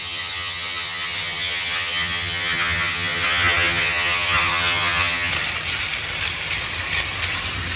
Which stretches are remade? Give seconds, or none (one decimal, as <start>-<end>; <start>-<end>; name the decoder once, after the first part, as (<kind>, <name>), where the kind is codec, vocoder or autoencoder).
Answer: 0.0-5.3 (vocoder, HiFi-GAN)